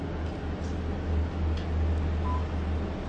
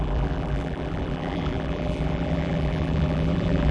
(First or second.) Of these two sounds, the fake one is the second